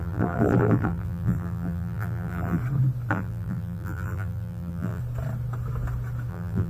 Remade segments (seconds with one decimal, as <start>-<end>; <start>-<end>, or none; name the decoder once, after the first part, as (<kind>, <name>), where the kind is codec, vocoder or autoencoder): 0.0-2.6 (vocoder, BigVGAN v2); 3.1-5.0; 6.3-6.7